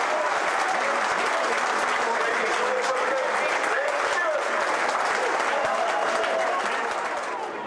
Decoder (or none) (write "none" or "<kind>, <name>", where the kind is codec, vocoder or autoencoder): none